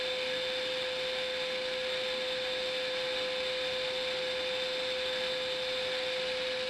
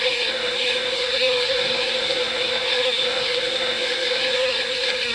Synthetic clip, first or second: second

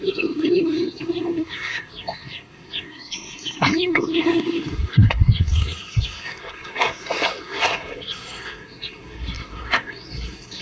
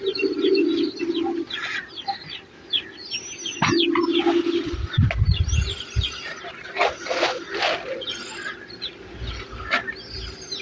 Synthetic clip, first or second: first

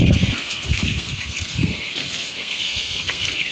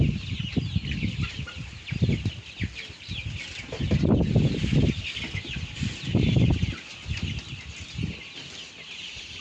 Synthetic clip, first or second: first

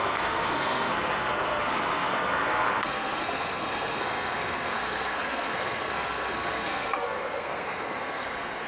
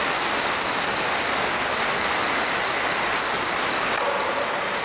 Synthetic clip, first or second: first